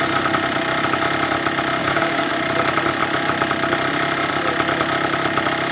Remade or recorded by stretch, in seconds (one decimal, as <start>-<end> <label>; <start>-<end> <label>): 0.0-1.8 recorded; 1.8-2.3 remade; 2.3-5.7 recorded